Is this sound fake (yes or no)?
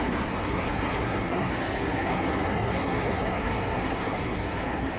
yes